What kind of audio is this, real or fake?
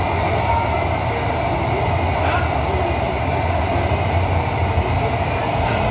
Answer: real